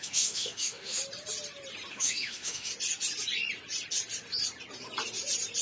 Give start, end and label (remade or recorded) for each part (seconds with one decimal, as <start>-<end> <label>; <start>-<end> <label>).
0.0-1.0 remade; 1.0-1.9 recorded; 1.9-2.7 remade; 2.7-5.6 recorded

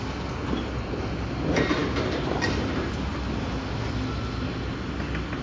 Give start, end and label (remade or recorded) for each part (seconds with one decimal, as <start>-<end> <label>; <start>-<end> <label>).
0.0-5.4 recorded

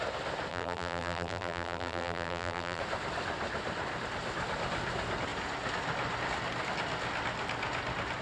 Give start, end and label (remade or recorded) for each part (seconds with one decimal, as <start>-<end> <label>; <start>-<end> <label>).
0.0-0.5 recorded; 0.5-2.8 remade; 2.8-8.2 recorded

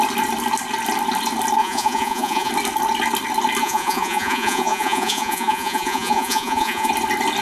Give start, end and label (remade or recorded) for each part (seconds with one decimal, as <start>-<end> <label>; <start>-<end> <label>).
0.0-1.6 recorded; 1.6-2.5 remade; 2.5-3.6 recorded; 3.6-6.9 remade; 6.9-7.4 recorded

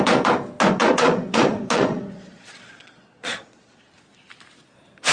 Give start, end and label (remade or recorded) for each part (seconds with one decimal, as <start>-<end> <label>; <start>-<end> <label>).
0.0-0.8 recorded; 0.8-3.9 remade; 3.9-5.1 recorded